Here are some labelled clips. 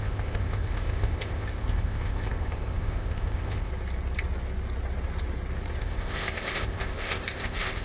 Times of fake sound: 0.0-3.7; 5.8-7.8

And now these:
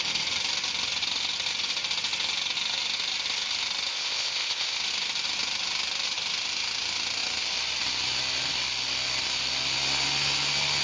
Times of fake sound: 3.9-4.8